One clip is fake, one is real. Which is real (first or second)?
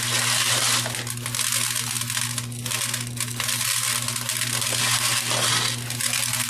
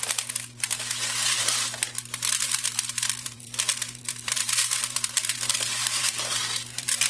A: first